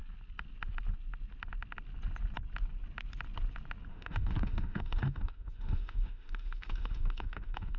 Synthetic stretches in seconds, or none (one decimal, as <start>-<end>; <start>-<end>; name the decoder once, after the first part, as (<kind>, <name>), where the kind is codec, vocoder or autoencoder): 3.9-7.8 (autoencoder, DAC-VAE)

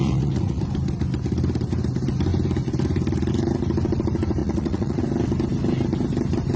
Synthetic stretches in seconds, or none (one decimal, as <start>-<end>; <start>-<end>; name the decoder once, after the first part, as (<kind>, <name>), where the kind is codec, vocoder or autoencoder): 0.0-0.6 (vocoder, Vocos); 4.4-5.0